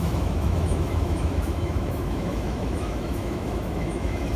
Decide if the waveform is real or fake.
fake